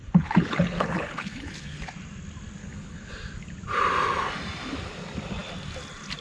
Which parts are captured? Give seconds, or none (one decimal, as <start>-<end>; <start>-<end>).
1.9-2.6; 3.1-6.2